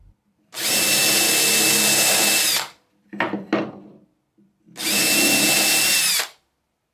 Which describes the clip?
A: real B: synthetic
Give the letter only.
A